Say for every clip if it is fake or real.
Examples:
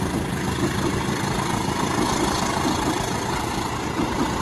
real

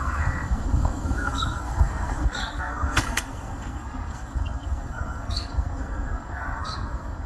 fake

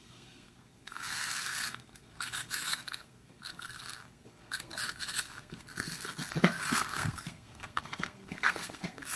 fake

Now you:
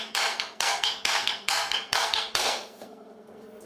fake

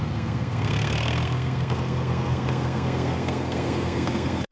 fake